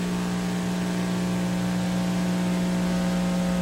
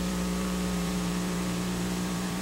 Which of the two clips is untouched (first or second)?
first